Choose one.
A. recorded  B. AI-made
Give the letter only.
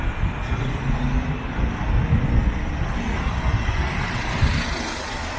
A